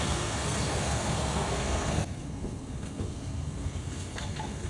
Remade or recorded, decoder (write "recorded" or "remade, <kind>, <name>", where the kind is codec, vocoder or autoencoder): remade, codec, SNAC